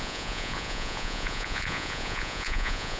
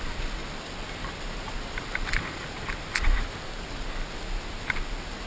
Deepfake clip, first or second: first